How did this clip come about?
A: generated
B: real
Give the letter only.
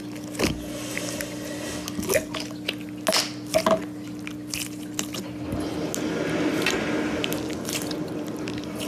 B